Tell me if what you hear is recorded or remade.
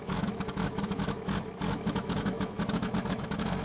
remade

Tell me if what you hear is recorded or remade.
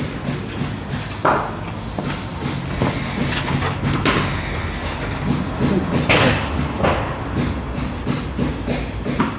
recorded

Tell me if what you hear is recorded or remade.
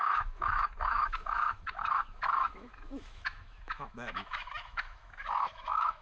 remade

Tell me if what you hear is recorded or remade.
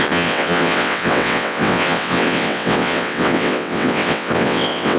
remade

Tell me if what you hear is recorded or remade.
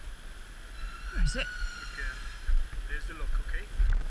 recorded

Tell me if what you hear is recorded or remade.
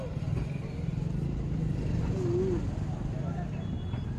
recorded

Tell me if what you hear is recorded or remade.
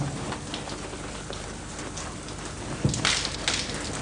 recorded